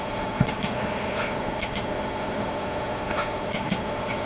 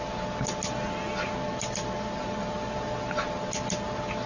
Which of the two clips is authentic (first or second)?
second